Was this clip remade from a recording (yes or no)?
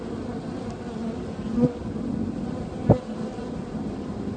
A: no